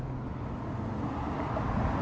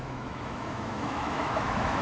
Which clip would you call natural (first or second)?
first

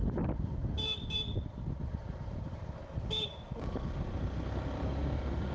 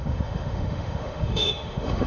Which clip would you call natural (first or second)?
first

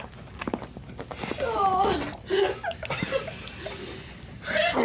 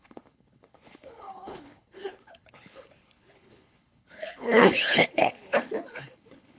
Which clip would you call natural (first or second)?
first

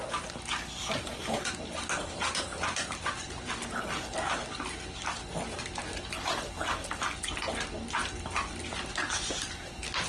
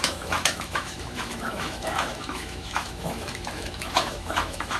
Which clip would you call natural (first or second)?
first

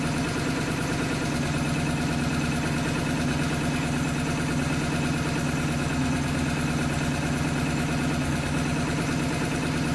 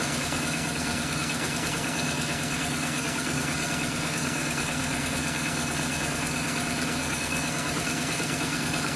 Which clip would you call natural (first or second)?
first